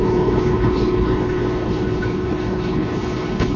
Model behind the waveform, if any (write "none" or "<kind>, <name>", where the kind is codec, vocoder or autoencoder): codec, HILCodec